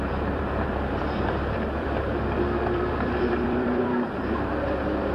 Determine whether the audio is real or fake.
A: fake